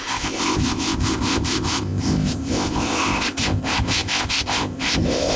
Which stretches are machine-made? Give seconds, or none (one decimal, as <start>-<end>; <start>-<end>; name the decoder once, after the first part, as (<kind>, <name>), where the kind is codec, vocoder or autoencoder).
0.0-5.4 (codec, ZipCodec)